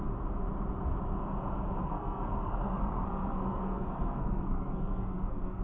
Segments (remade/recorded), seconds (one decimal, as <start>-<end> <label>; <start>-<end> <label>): 0.0-1.8 recorded; 1.8-5.6 remade